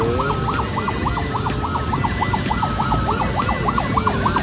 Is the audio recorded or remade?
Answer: recorded